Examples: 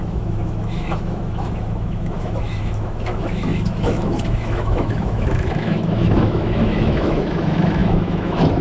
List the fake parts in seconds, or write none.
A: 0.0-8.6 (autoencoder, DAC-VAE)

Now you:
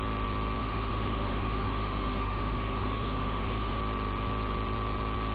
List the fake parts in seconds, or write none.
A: 0.6-3.8 (autoencoder, DAC-VAE)

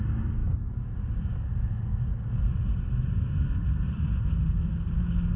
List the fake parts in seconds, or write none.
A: none

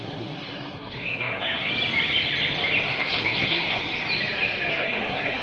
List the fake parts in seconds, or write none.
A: 0.0-1.7 (codec, SNAC); 3.0-3.8; 4.7-5.4

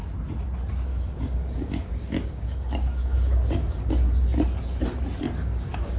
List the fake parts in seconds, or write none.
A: 0.9-3.9 (codec, DAC); 5.4-6.0

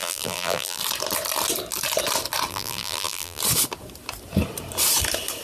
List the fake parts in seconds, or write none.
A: 0.0-0.8 (vocoder, BigVGAN v2); 2.5-3.4

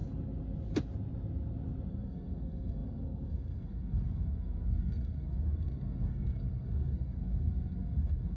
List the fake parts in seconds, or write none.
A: 1.9-8.4 (codec, SNAC)

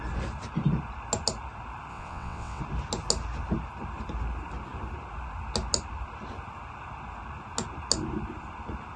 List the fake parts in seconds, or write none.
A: 1.9-2.6 (vocoder, WaveNeXt)